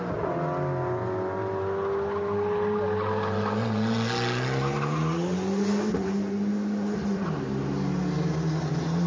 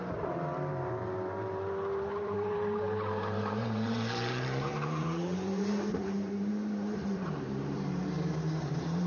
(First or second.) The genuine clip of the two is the first